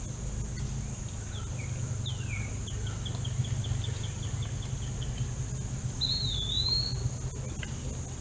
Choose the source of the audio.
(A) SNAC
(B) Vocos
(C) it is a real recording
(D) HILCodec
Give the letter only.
C